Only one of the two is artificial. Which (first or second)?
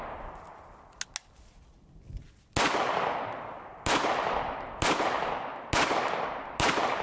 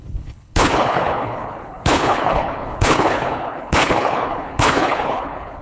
second